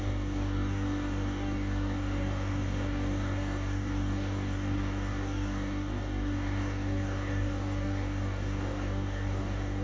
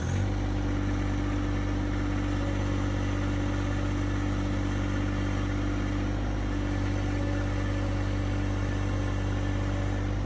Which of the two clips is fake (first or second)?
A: first